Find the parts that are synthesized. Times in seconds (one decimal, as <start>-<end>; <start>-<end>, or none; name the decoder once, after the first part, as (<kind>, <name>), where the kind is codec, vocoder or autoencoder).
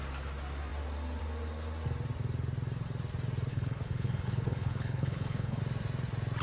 3.5-5.6 (codec, HILCodec)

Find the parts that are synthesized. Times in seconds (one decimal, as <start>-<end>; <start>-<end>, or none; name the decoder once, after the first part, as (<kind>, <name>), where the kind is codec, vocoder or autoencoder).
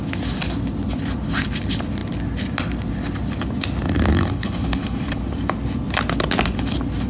4.1-5.2 (codec, HILCodec)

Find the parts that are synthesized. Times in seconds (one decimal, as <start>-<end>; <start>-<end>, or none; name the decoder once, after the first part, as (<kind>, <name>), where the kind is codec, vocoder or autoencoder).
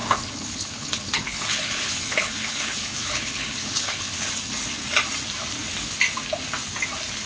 0.0-4.3 (codec, HILCodec)